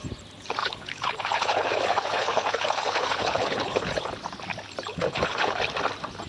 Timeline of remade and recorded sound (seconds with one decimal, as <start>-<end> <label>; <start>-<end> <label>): 0.0-0.6 recorded; 0.6-4.1 remade; 4.1-4.9 recorded; 4.9-5.6 remade; 5.6-6.3 recorded